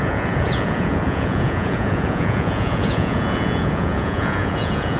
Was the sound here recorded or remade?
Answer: remade